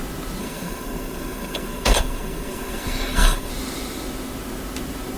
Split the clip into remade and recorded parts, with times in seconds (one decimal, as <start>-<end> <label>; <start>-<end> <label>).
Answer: 0.0-0.4 recorded; 0.4-3.5 remade; 3.5-5.2 recorded